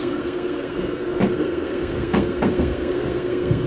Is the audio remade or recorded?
remade